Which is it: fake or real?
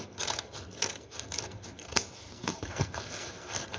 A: fake